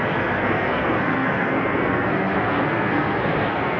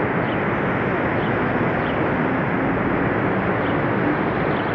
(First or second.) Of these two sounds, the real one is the second